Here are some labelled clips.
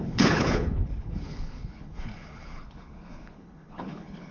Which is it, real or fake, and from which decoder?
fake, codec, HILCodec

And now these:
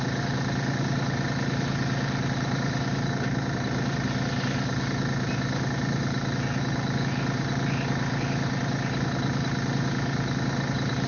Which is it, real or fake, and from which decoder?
real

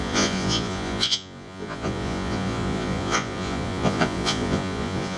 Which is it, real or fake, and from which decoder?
fake, vocoder, Vocos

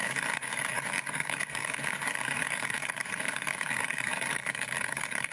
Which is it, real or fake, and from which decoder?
fake, codec, DAC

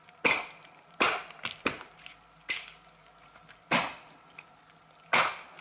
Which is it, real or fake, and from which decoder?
real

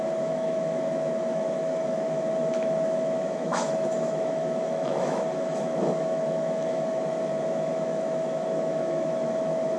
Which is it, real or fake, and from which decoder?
fake, autoencoder, DAC-VAE